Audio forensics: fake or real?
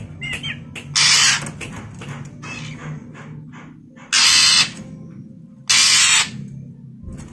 real